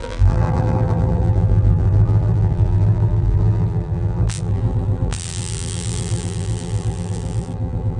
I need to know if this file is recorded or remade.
remade